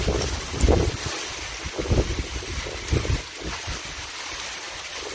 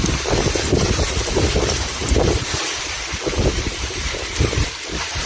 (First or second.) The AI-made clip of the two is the second